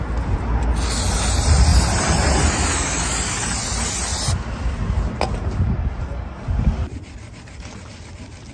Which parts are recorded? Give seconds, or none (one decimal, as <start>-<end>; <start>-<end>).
0.0-8.5